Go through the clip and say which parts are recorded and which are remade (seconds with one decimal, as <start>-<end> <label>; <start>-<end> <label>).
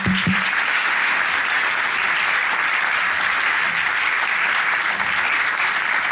0.0-0.7 recorded; 0.7-1.2 remade; 1.2-6.1 recorded